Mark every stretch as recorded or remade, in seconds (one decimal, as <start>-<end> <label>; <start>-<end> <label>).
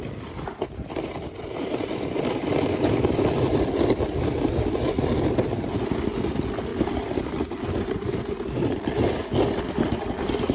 0.0-10.5 recorded